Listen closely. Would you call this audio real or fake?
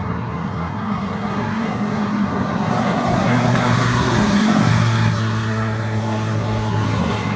fake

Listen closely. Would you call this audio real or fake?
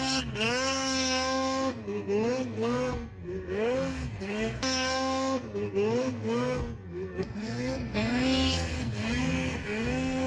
fake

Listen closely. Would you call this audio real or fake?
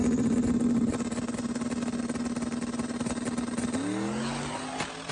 real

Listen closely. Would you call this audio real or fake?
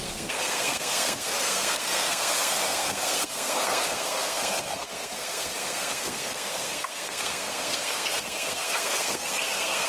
fake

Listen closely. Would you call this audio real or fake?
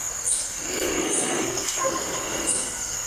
fake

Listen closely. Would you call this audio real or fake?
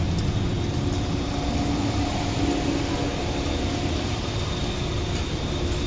real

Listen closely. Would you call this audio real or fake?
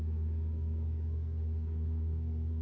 fake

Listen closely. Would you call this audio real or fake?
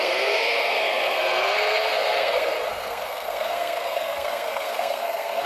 fake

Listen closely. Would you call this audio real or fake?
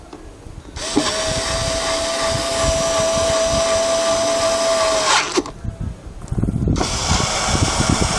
real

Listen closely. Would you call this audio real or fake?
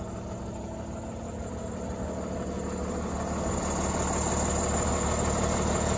real